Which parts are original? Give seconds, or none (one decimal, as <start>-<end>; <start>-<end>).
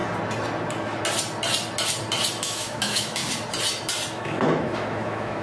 0.0-2.4; 3.2-4.1